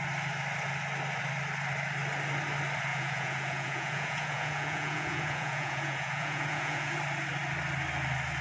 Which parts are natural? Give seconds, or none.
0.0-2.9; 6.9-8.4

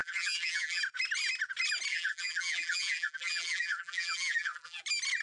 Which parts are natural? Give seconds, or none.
0.8-1.9; 4.8-5.2

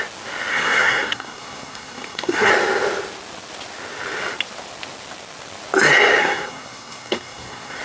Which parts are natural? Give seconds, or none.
0.0-0.5; 2.5-6.2